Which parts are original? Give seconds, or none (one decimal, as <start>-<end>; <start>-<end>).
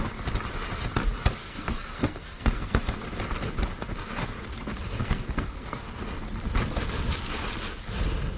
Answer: 0.0-1.4; 2.8-5.0; 6.0-8.4